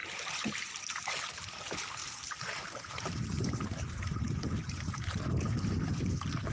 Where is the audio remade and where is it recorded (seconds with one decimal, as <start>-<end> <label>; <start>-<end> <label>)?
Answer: 0.0-2.0 recorded; 2.0-5.9 remade; 5.9-6.5 recorded